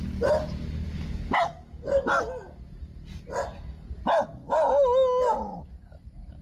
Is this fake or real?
real